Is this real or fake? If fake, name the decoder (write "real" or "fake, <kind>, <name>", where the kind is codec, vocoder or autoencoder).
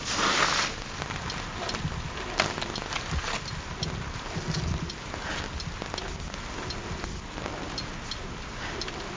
real